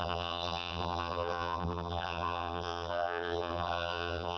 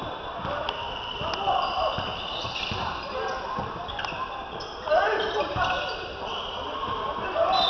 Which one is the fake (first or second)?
first